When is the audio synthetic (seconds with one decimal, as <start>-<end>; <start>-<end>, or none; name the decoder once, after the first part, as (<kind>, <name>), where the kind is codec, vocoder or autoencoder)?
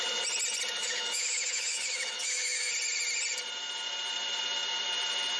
0.8-2.7 (autoencoder, DAC-VAE)